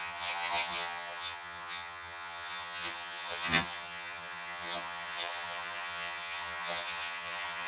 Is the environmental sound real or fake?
fake